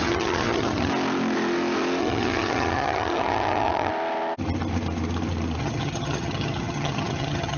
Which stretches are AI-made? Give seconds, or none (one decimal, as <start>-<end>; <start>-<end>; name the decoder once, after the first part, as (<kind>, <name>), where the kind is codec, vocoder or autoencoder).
0.0-0.9 (vocoder, HiFi-GAN); 2.0-3.9; 5.6-7.6